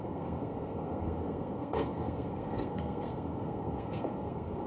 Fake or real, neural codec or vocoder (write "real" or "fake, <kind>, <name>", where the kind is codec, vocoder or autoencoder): fake, codec, SNAC